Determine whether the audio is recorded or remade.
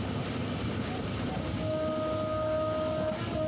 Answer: recorded